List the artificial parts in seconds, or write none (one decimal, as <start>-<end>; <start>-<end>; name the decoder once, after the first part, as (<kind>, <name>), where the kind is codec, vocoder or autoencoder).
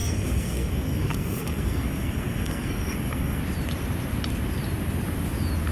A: 0.0-3.4 (codec, SNAC)